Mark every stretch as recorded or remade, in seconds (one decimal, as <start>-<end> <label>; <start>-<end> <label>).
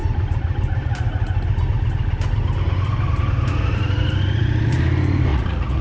0.0-5.3 recorded; 5.3-5.8 remade